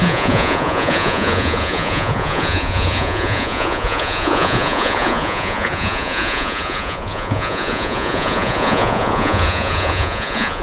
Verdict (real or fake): fake